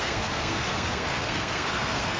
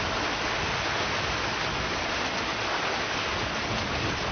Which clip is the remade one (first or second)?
first